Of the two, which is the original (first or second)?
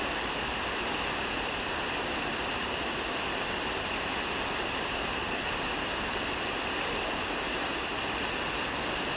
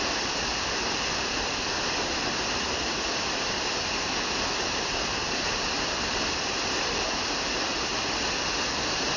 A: first